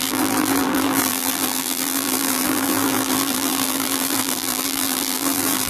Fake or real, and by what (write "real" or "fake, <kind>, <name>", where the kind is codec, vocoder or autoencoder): fake, vocoder, BigVGAN v2